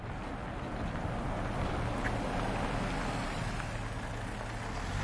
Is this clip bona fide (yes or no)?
yes